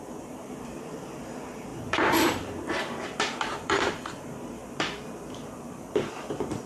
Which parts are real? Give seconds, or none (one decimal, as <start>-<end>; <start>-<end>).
none